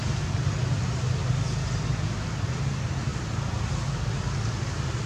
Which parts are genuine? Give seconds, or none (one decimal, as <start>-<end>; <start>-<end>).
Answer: 0.0-5.1